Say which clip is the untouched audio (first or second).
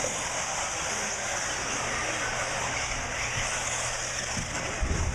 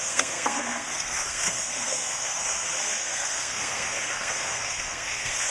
first